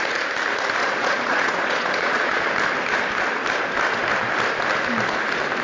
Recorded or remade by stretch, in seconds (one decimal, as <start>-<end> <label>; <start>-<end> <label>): 0.0-0.8 recorded; 0.8-2.5 remade; 2.5-5.6 recorded

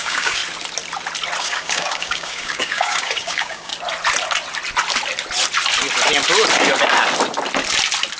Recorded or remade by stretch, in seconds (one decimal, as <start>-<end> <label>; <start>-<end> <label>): 0.0-0.4 remade; 0.4-1.4 recorded; 1.4-3.7 remade; 3.7-8.2 recorded

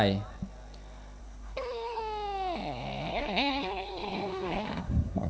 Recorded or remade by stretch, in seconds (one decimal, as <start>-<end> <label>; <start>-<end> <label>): 0.0-1.2 recorded; 1.2-2.0 remade; 2.0-3.1 recorded; 3.1-5.3 remade

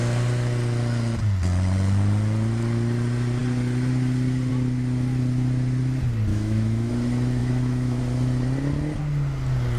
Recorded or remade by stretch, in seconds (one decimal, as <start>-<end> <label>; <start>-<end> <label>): 0.0-6.3 recorded; 6.3-6.9 remade; 6.9-7.4 recorded; 7.4-8.0 remade; 8.0-9.8 recorded

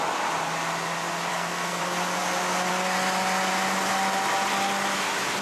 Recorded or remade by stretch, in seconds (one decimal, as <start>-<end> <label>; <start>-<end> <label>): 0.0-1.3 recorded; 1.3-1.8 remade; 1.8-5.4 recorded

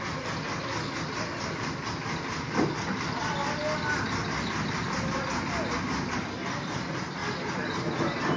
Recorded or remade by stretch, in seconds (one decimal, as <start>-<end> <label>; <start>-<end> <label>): 0.0-8.4 recorded

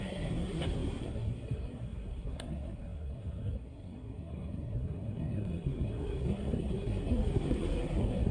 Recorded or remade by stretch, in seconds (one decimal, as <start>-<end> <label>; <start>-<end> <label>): 0.0-8.3 remade